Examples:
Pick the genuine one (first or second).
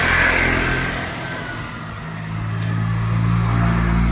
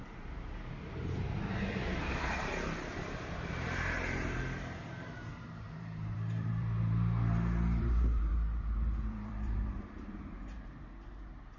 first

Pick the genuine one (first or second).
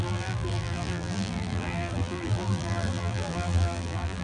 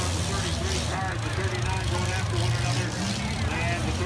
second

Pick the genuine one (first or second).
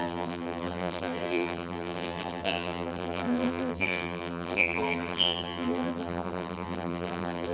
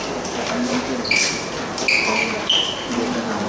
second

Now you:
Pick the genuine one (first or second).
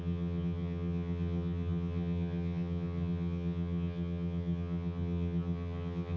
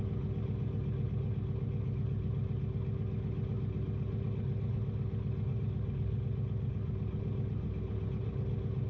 second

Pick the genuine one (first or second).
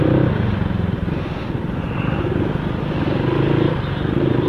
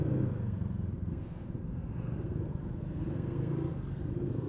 first